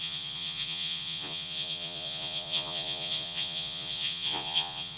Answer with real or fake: fake